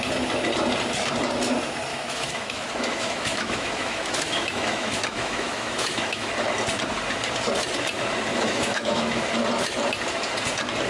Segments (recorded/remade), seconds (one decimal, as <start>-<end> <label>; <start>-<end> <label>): 0.0-1.9 recorded; 1.9-6.3 remade; 6.3-8.3 recorded; 8.3-9.2 remade; 9.2-10.9 recorded